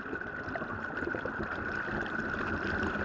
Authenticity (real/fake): real